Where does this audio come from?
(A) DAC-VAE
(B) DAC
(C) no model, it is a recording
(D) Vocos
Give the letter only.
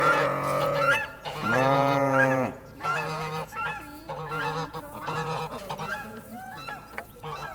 D